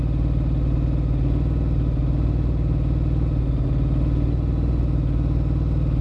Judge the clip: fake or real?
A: real